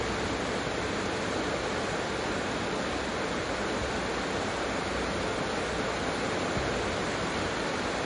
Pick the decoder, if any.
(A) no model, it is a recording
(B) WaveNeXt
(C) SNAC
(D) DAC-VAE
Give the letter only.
A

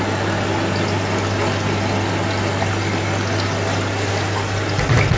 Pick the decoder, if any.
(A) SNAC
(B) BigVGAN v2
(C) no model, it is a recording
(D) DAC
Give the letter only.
C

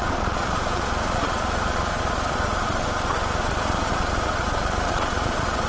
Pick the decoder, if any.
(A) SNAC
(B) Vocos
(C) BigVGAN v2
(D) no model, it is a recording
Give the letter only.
B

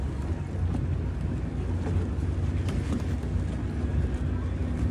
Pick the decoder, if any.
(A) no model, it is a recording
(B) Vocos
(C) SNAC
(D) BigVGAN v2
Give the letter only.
A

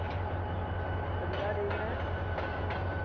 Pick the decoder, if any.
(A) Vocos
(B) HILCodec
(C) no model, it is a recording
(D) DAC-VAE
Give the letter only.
C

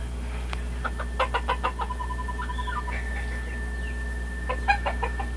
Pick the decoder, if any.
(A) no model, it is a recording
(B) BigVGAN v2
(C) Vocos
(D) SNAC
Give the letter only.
A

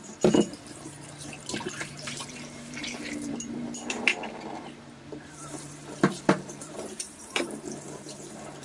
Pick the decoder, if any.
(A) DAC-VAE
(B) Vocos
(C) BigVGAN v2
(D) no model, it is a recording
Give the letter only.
C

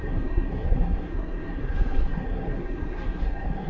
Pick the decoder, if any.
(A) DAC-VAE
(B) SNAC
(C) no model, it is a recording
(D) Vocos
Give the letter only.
B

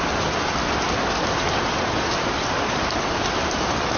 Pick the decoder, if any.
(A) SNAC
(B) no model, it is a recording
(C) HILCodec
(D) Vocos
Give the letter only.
B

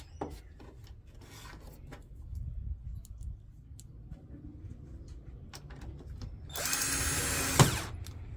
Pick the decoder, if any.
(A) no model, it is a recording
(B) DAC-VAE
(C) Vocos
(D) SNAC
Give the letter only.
A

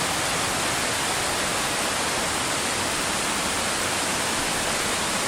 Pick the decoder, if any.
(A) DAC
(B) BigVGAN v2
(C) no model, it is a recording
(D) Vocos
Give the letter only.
C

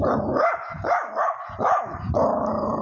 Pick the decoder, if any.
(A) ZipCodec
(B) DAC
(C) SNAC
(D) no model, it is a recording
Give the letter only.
D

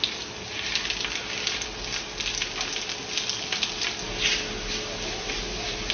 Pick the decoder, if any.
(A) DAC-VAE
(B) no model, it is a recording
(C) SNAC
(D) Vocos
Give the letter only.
B